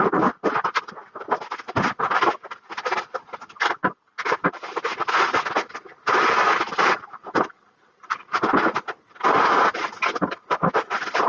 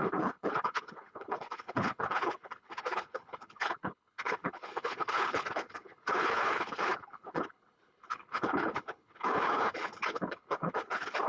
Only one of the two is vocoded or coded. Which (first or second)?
second